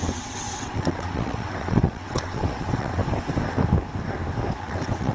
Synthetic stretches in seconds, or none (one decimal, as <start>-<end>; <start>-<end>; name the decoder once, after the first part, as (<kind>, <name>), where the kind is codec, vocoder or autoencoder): 0.0-3.0 (vocoder, WaveNeXt); 4.6-5.1